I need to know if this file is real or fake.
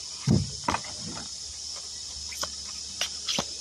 real